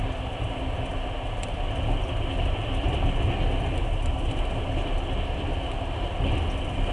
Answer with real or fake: real